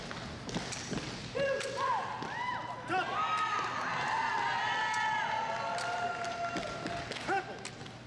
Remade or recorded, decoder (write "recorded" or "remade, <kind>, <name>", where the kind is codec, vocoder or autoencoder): recorded